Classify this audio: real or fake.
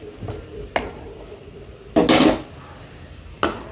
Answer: real